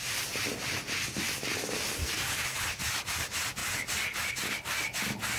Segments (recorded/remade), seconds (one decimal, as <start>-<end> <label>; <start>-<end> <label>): 0.0-2.0 recorded; 2.0-2.6 remade; 2.6-5.4 recorded